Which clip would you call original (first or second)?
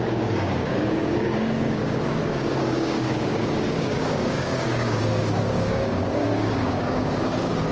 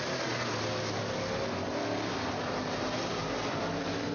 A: second